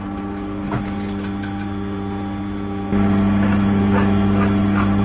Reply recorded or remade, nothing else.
recorded